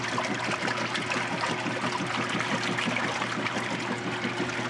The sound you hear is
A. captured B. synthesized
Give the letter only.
A